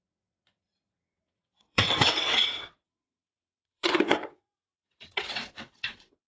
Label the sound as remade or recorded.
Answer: remade